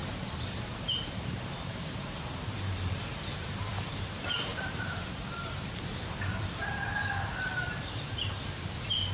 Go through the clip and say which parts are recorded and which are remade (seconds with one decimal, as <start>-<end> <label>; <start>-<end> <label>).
0.0-0.9 recorded; 0.9-9.1 remade